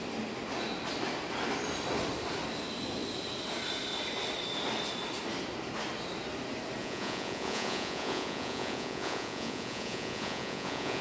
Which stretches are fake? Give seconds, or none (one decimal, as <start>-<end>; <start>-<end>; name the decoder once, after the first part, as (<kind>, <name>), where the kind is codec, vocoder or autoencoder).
6.8-11.0 (vocoder, Vocos)